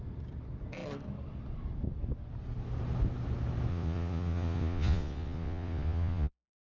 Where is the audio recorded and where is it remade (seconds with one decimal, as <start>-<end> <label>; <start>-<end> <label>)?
0.0-3.7 recorded; 3.7-6.7 remade